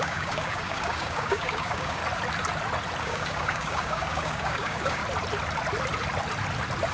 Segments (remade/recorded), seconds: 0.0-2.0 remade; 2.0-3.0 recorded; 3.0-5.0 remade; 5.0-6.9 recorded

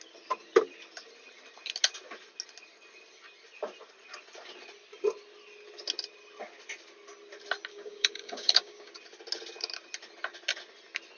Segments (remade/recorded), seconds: 0.0-7.7 recorded; 7.7-8.9 remade; 8.9-11.2 recorded

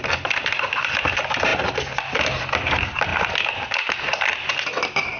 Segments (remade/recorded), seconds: 0.0-5.2 recorded